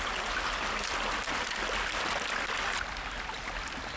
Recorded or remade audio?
recorded